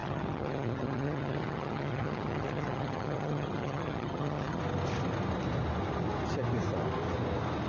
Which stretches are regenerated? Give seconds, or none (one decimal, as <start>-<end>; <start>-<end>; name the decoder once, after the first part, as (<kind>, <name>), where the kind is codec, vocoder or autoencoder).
0.0-4.6 (vocoder, HiFi-GAN)